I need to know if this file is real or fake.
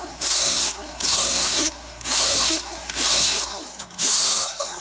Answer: fake